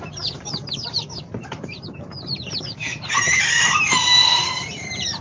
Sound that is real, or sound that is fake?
fake